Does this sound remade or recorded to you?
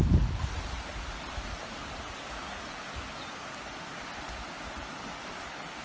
recorded